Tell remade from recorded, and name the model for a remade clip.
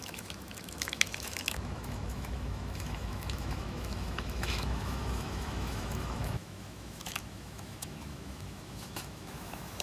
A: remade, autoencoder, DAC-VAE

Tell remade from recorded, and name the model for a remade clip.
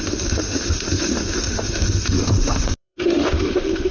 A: remade, autoencoder, DAC-VAE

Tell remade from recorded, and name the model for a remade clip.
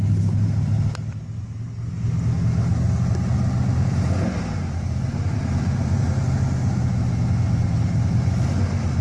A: recorded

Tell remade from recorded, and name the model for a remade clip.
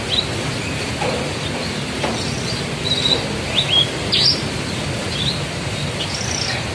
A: recorded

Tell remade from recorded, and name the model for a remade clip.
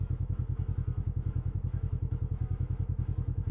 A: remade, autoencoder, DAC-VAE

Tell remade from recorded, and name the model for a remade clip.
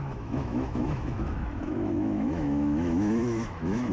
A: remade, autoencoder, DAC-VAE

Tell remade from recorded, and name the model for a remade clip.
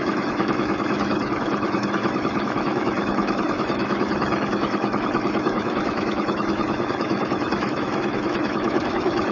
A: remade, autoencoder, DAC-VAE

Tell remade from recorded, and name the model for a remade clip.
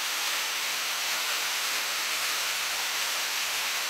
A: remade, autoencoder, DAC-VAE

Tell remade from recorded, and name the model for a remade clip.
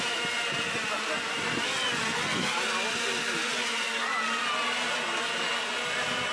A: recorded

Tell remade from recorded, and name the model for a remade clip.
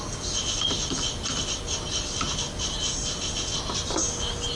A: recorded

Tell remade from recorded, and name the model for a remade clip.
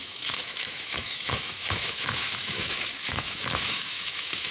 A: remade, autoencoder, DAC-VAE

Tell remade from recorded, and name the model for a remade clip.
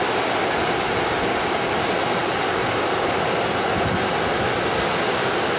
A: recorded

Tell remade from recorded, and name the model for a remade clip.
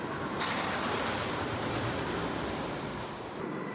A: recorded